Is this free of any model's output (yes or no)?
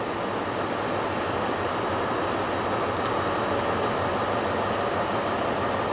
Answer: yes